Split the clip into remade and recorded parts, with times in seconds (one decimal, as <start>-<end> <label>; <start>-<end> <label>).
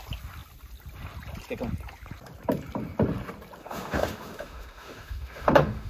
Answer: 0.0-3.6 recorded; 3.6-5.9 remade